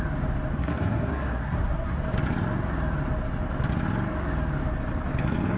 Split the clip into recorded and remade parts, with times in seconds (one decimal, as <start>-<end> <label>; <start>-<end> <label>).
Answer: 0.0-0.6 recorded; 0.6-2.0 remade; 2.0-5.6 recorded